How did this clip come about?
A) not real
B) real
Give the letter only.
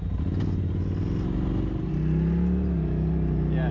B